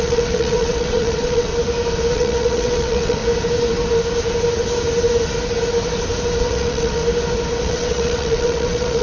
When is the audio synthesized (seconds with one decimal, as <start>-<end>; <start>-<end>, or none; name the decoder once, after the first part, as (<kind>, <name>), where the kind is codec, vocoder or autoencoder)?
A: 0.0-1.5 (vocoder, WaveNeXt); 2.1-3.2; 6.4-7.0; 7.6-9.0